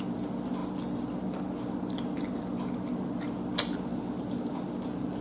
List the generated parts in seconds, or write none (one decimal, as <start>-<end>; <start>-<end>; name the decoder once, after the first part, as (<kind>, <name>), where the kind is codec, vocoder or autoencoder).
none